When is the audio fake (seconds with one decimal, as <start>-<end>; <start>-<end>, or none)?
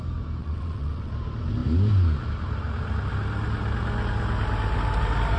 0.4-1.1